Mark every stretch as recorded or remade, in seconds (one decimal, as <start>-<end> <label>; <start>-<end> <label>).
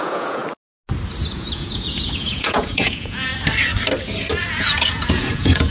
0.0-0.4 remade; 0.4-1.3 recorded; 1.3-3.3 remade; 3.3-4.5 recorded; 4.5-5.7 remade